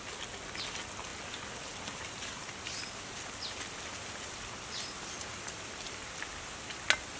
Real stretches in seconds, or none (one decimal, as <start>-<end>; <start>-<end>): 0.0-7.2